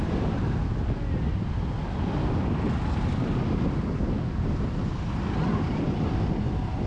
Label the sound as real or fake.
real